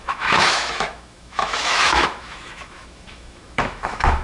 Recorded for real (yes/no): no